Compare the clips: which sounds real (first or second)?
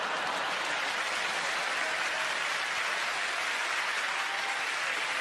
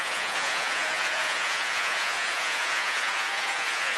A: first